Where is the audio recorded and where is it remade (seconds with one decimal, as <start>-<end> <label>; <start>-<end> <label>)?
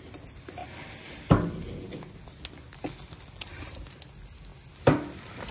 0.0-5.5 recorded